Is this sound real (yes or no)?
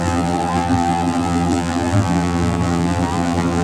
no